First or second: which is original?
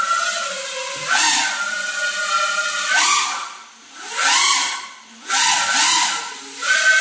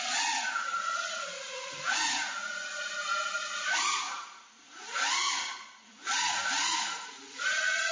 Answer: first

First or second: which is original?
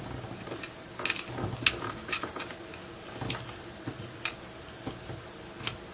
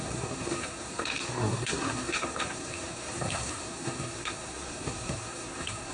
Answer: first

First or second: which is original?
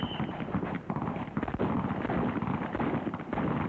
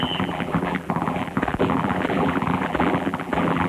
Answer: first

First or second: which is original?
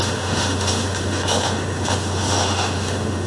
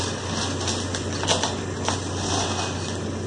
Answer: second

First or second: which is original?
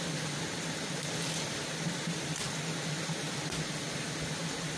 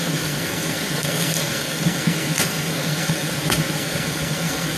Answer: first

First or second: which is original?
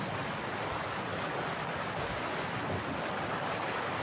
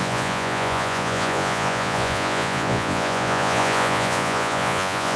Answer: first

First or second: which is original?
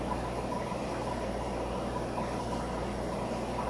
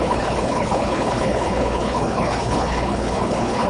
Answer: first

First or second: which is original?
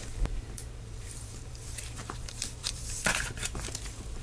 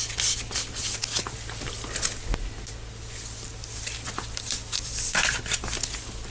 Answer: second